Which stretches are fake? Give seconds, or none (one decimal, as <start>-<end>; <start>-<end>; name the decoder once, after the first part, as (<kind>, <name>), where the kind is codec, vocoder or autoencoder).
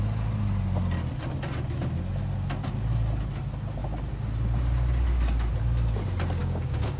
6.4-7.0 (codec, DAC)